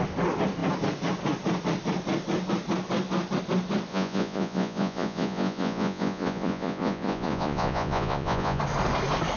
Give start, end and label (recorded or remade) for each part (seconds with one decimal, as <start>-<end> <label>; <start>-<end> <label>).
0.0-3.9 recorded; 3.9-8.6 remade; 8.6-9.4 recorded